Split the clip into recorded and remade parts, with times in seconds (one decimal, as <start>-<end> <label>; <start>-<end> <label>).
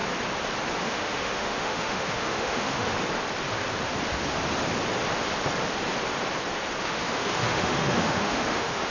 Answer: 0.0-0.8 recorded; 0.8-2.9 remade; 2.9-6.8 recorded; 6.8-8.9 remade